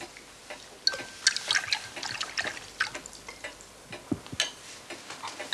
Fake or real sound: real